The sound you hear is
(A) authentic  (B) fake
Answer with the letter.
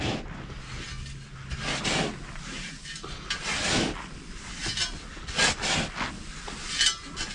A